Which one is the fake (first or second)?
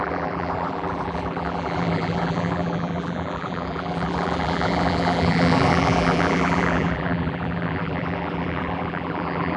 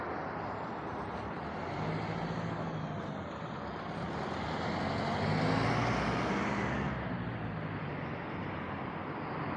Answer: first